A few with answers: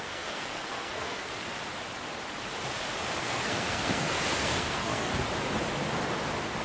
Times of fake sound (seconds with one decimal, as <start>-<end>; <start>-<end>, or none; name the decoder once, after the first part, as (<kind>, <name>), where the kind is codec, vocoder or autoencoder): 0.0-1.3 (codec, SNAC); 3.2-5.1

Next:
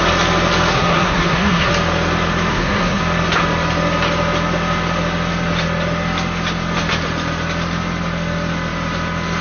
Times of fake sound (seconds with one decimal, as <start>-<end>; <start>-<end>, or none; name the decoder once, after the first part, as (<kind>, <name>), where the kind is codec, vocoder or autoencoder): 0.7-1.7 (codec, SNAC); 2.5-3.0

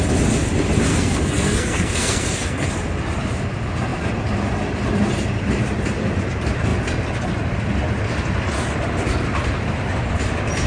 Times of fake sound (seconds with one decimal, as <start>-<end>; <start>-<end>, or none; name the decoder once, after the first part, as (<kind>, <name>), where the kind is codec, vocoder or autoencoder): 0.9-2.7 (codec, SNAC)

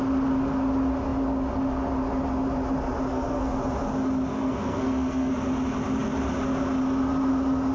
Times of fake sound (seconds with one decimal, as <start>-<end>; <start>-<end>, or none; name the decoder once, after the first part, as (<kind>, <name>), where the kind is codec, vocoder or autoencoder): 3.1-3.6 (codec, SNAC); 4.3-5.3